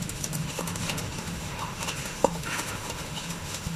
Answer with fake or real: fake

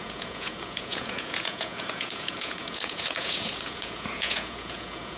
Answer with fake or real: fake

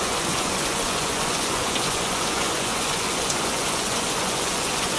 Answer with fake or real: fake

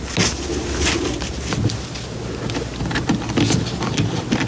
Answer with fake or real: real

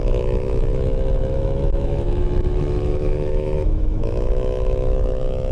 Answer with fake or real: fake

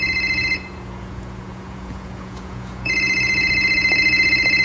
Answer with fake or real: fake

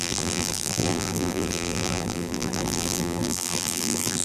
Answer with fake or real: fake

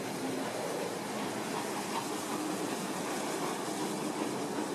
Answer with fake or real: real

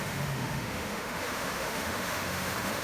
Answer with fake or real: fake